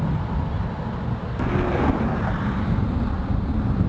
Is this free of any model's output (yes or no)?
yes